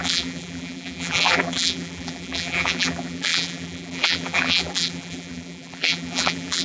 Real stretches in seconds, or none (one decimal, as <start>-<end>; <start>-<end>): none